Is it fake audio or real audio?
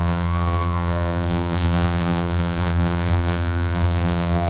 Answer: fake